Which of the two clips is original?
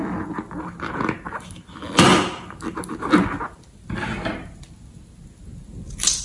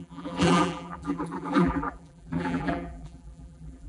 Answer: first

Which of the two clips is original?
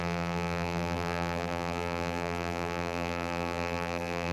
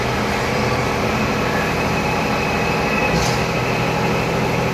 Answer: second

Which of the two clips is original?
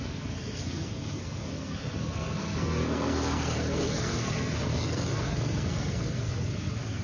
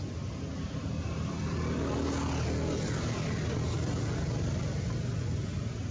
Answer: second